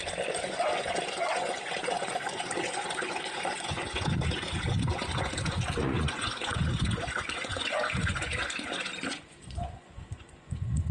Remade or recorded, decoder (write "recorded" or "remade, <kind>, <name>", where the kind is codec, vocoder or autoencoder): remade, vocoder, Vocos